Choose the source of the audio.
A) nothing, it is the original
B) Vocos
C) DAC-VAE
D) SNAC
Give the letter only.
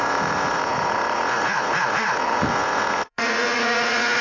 B